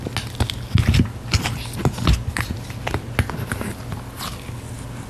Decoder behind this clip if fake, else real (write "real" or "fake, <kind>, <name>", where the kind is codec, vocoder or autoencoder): real